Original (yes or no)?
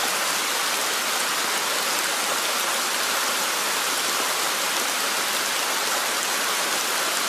yes